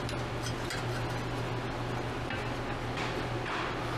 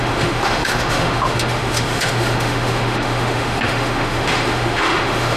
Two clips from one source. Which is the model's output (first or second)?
second